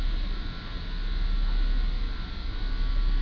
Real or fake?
real